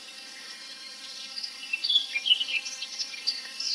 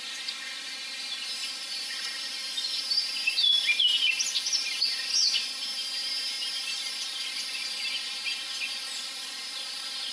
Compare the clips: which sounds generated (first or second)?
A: first